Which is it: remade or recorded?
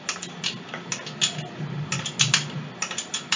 recorded